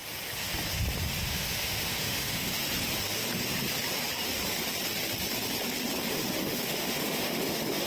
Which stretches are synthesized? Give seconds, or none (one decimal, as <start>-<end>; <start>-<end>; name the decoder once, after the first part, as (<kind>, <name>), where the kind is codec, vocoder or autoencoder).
1.3-2.5 (autoencoder, DAC-VAE); 6.1-7.9